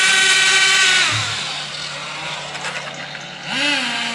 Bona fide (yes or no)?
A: yes